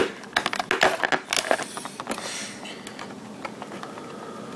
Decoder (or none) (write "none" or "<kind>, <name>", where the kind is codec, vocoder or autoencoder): none